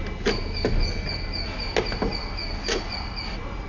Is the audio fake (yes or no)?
no